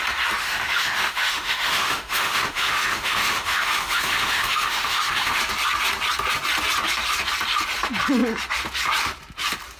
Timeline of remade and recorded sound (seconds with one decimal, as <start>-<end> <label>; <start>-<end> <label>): 0.0-0.4 recorded; 0.4-5.4 remade; 5.4-9.8 recorded